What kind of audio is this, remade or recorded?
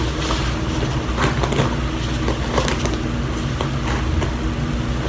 recorded